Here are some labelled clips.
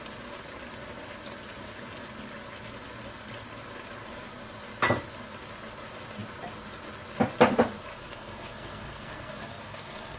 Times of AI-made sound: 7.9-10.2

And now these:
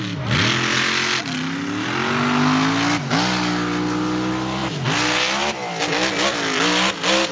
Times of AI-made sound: none

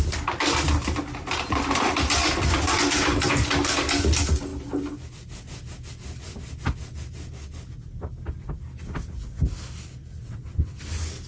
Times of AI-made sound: 10.2-10.8

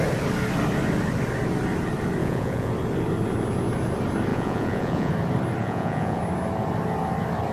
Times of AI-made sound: 2.2-2.7; 4.3-5.1; 5.6-6.2

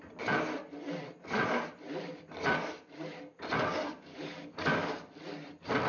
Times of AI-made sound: 4.1-4.9

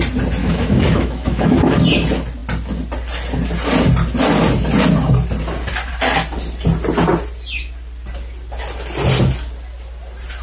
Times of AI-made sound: 0.4-1.8

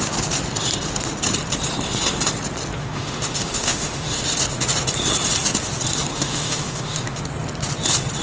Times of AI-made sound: 2.8-4.2; 6.1-7.2

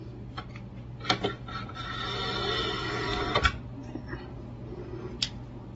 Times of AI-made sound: 3.1-4.0